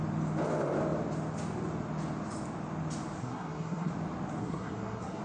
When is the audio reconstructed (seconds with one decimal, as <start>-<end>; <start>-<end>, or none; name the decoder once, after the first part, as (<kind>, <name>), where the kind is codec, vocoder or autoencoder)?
3.2-3.9 (codec, SNAC); 4.4-5.2